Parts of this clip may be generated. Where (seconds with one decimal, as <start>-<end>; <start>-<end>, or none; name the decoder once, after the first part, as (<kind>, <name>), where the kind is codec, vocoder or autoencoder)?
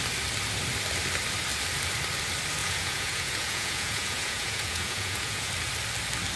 2.6-5.5 (vocoder, Vocos)